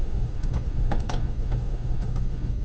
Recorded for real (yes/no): no